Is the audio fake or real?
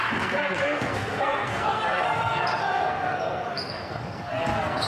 fake